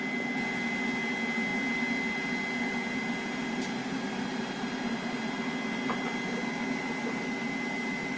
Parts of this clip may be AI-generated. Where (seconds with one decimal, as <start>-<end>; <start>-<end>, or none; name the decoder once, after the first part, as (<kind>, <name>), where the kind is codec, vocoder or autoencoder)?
none